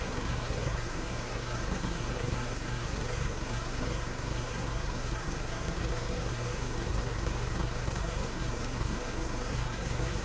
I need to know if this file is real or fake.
fake